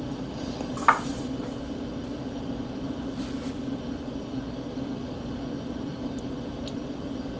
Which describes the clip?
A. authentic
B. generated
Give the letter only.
A